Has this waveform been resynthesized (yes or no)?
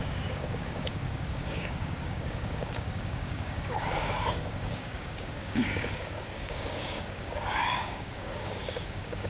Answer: yes